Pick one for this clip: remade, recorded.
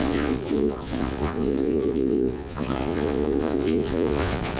remade